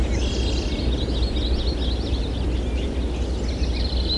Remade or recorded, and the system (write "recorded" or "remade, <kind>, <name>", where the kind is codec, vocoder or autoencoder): recorded